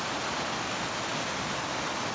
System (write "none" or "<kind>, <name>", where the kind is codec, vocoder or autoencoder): none